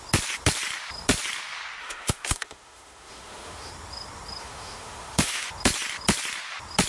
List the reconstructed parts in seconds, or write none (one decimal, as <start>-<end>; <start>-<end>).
1.8-3.7; 4.4-5.5